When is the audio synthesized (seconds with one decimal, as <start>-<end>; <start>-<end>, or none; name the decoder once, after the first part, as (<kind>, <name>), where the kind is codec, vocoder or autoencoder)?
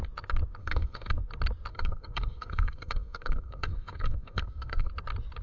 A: 0.6-1.1 (codec, SNAC); 1.7-4.9